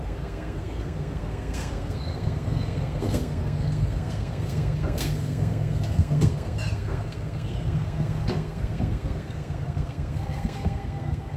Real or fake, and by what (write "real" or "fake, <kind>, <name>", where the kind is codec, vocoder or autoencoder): fake, codec, SNAC